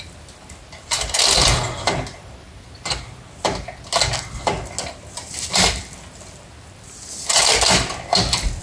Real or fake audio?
real